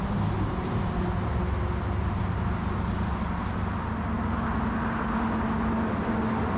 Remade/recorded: recorded